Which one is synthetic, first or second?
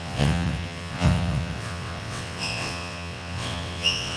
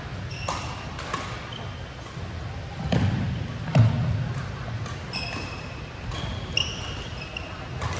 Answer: first